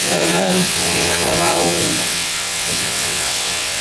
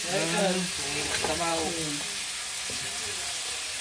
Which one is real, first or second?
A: second